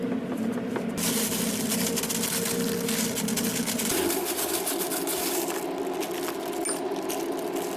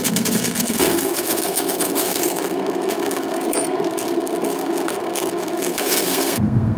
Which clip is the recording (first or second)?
first